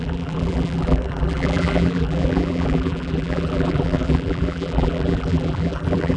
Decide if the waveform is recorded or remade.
remade